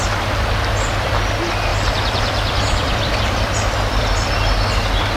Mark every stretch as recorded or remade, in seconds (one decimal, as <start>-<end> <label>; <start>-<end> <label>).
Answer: 0.0-1.7 recorded; 1.7-4.3 remade; 4.3-5.2 recorded